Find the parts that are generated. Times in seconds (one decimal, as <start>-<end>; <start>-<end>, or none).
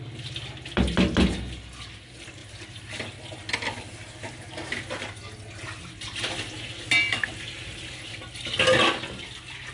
none